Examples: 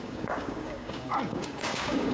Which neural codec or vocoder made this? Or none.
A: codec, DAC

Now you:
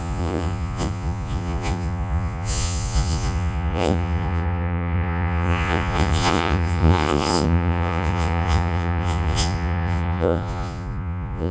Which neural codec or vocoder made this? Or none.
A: vocoder, Vocos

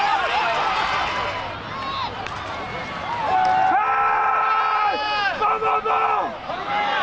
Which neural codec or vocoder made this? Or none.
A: none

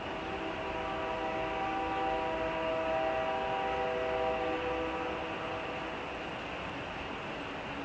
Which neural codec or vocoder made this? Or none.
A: none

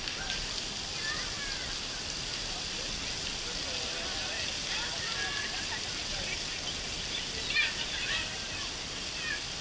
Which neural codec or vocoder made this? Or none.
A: none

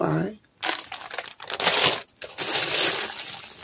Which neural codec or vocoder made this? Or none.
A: none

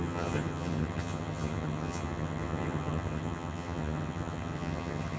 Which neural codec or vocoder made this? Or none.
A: vocoder, HiFi-GAN